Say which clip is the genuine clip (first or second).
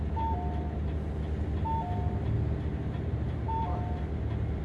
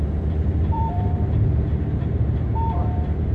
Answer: first